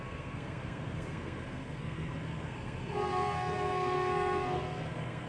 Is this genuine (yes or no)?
no